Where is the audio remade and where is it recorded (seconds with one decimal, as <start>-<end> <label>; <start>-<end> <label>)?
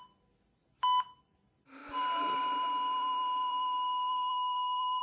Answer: 0.0-1.8 recorded; 1.8-5.0 remade